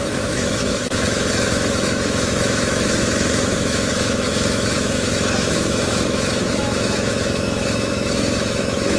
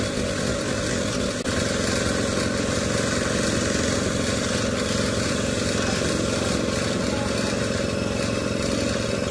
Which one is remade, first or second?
first